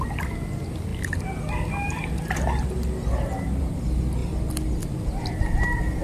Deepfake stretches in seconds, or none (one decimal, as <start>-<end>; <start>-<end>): none

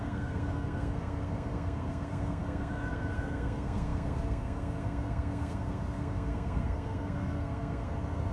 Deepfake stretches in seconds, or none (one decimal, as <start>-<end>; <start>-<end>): 0.0-8.3

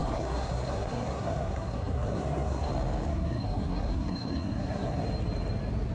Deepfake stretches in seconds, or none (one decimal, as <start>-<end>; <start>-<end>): 0.0-2.7; 3.1-5.0

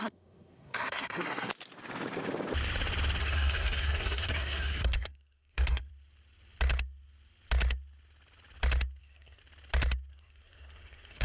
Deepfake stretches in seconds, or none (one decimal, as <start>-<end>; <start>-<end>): 0.0-1.5; 3.2-5.9; 9.0-9.4; 10.1-11.2